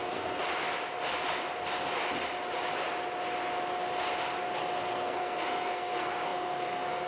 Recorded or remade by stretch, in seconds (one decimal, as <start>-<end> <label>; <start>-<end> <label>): 0.0-0.4 remade; 0.4-4.6 recorded; 4.6-7.1 remade